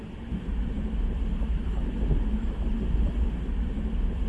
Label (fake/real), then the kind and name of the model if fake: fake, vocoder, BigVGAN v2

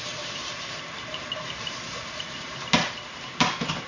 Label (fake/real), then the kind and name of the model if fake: fake, vocoder, BigVGAN v2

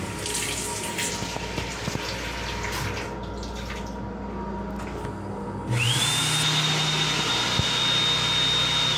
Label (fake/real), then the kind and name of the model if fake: real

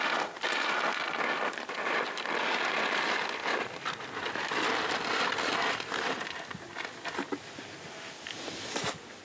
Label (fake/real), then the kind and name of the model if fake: fake, vocoder, BigVGAN v2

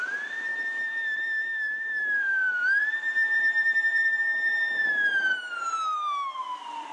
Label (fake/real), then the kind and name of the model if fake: fake, vocoder, BigVGAN v2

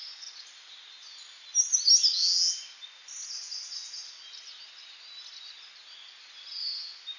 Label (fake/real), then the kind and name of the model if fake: real